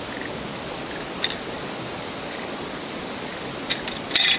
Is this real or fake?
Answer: real